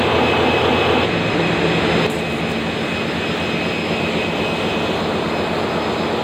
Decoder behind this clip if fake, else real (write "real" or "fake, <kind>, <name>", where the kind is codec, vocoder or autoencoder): real